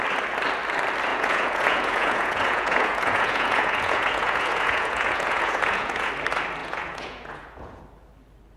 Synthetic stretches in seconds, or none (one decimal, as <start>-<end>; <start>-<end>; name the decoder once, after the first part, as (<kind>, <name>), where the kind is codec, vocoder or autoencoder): 1.1-6.1 (vocoder, Vocos); 6.6-7.8